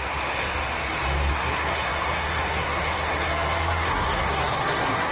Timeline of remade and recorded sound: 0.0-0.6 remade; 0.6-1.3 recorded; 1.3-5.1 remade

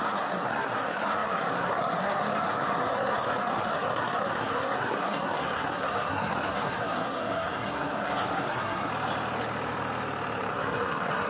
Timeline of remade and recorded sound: 0.0-8.9 remade; 8.9-10.5 recorded; 10.5-11.3 remade

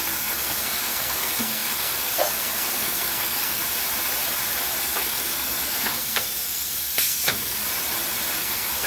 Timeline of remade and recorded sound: 0.0-3.6 remade; 3.6-4.8 recorded; 4.8-7.6 remade; 7.6-8.4 recorded; 8.4-8.9 remade

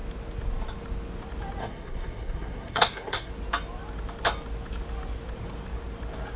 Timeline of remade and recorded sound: 0.0-1.6 recorded; 1.6-3.3 remade; 3.3-6.4 recorded

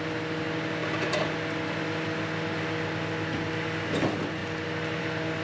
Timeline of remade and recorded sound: 0.0-5.4 recorded

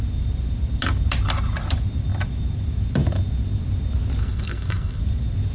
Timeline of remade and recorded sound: 0.0-4.2 recorded; 4.2-5.0 remade; 5.0-5.5 recorded

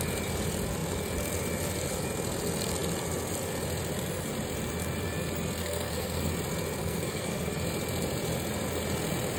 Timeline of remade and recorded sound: 0.0-5.6 recorded; 5.6-6.3 remade; 6.3-6.8 recorded; 6.8-7.5 remade; 7.5-9.4 recorded